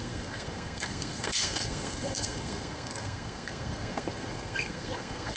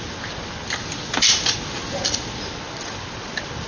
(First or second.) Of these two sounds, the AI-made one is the first